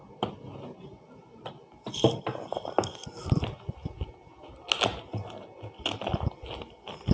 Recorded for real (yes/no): yes